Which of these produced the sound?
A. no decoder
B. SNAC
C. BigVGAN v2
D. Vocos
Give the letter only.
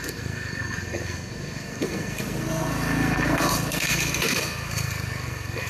B